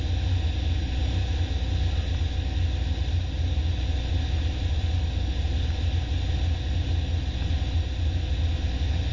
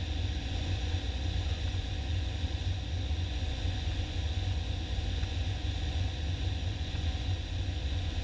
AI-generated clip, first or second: second